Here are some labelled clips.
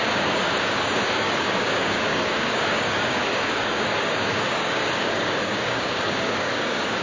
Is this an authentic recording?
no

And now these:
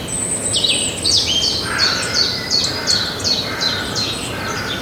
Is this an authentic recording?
yes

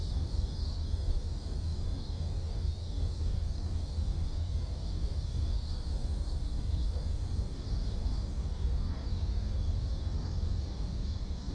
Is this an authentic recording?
no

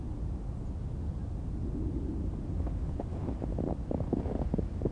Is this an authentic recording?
yes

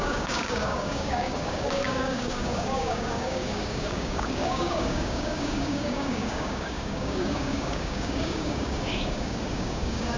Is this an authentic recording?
no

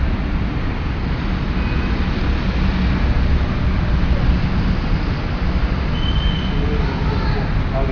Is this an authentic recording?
yes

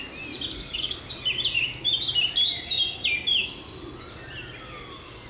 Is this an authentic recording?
yes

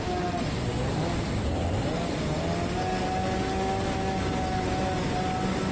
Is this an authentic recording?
yes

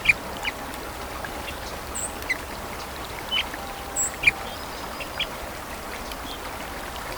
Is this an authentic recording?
yes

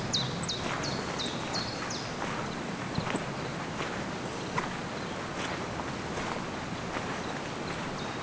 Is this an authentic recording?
yes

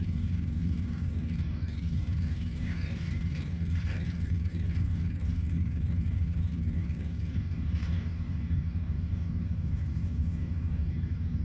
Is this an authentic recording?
no